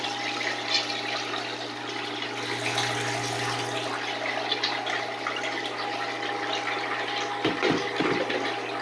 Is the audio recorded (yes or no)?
yes